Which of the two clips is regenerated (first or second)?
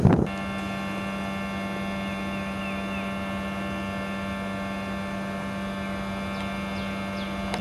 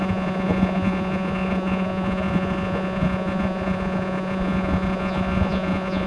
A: second